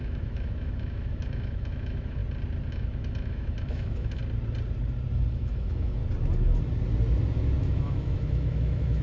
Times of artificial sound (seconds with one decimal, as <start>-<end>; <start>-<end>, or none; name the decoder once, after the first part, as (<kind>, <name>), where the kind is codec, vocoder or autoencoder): 0.0-2.2 (autoencoder, DAC-VAE); 2.7-4.2; 5.3-6.0; 7.6-9.0